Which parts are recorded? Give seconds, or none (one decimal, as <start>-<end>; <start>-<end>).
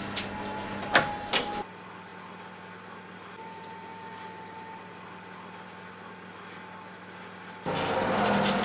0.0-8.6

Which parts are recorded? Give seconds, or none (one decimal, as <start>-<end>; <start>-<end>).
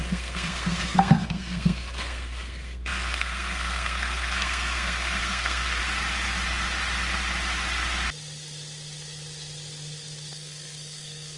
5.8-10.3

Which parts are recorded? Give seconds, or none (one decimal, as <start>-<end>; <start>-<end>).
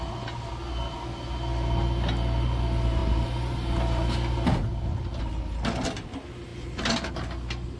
0.0-7.8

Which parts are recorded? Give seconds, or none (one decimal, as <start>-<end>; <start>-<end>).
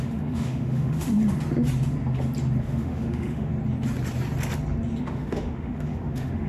1.1-2.6; 3.5-5.0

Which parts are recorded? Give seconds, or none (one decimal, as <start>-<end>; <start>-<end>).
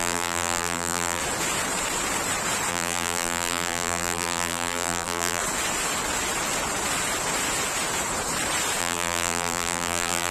1.2-2.7; 5.4-8.8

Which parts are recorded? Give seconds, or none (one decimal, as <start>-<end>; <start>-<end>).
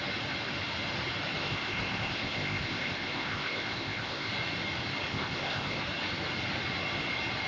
0.0-1.4; 4.3-5.1; 5.8-7.5